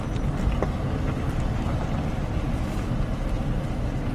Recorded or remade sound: recorded